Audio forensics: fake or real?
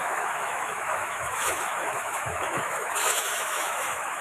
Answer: fake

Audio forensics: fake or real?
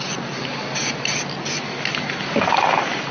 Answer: real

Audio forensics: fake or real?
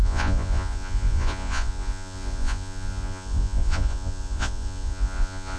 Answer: fake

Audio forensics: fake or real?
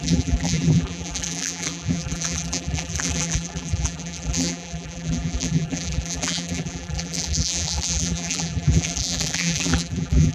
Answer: fake